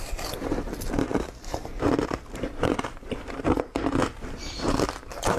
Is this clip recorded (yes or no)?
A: no